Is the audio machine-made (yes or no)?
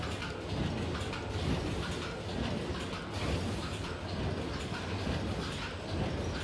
no